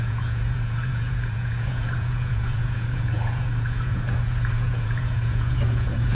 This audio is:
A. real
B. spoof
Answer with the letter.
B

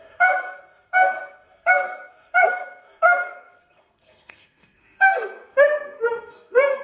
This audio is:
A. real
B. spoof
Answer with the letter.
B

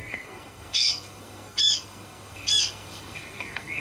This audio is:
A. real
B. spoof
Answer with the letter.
B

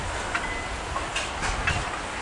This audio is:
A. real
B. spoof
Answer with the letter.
A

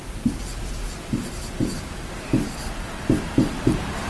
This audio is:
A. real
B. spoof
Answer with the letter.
B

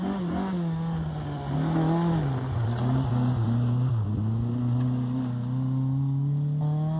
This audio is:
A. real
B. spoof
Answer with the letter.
A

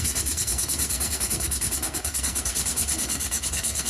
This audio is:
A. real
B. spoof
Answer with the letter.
B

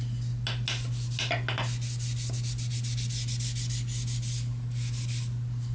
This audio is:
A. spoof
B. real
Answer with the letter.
B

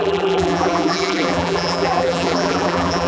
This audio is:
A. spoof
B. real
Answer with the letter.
A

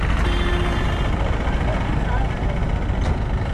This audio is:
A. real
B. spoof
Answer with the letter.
A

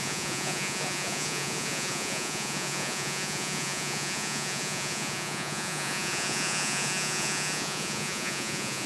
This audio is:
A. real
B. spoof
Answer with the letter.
B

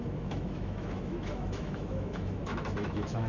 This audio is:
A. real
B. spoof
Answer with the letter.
B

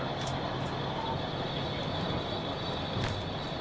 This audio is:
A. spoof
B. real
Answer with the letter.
B